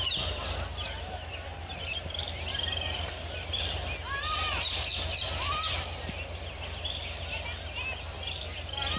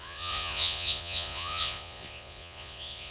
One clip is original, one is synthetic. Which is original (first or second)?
first